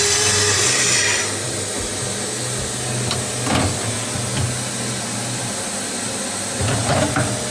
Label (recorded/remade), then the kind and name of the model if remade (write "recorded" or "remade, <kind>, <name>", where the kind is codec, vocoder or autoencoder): recorded